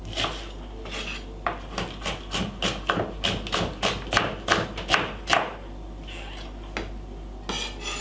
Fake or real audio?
real